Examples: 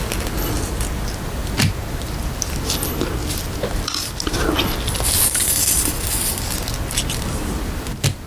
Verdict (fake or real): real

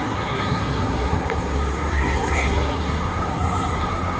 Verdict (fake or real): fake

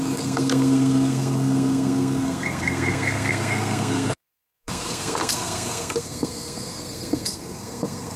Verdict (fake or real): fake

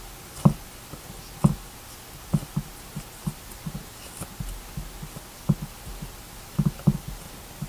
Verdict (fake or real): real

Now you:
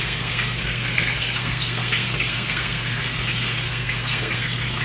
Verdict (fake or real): fake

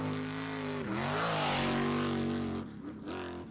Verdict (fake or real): real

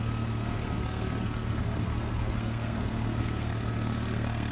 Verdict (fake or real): fake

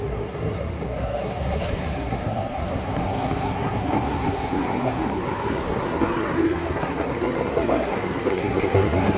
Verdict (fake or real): fake